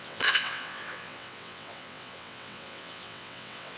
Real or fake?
fake